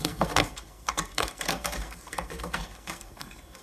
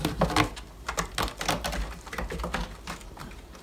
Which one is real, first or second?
second